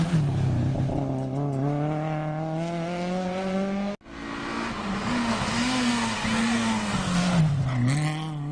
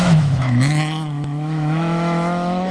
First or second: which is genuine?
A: first